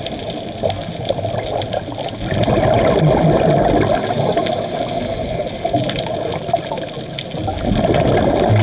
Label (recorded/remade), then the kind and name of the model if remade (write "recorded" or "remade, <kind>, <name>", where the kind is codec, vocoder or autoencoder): recorded